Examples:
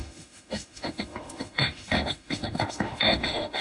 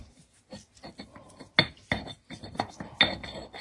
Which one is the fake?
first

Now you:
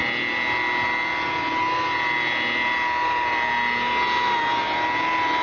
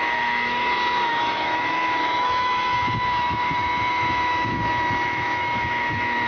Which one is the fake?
second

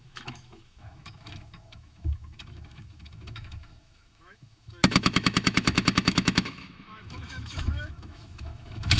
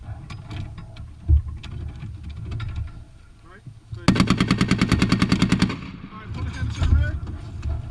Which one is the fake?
first